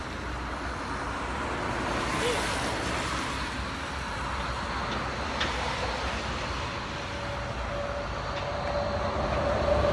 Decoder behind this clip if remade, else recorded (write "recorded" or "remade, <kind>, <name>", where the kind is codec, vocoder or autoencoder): recorded